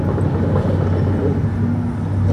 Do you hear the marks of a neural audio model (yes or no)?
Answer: no